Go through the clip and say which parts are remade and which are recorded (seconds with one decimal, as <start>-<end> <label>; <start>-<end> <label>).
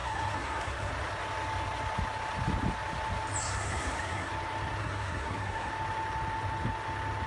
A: 0.0-0.9 remade; 0.9-3.4 recorded; 3.4-4.3 remade; 4.3-4.8 recorded; 4.8-5.7 remade; 5.7-7.3 recorded